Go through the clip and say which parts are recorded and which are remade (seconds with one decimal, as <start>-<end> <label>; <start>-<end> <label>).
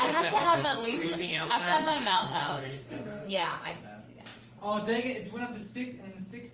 0.0-3.8 remade; 3.8-6.5 recorded